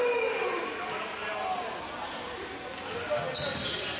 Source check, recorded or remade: recorded